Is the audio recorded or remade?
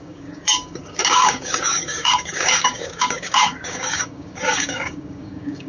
remade